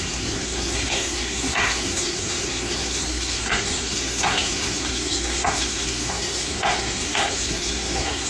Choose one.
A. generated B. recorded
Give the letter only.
A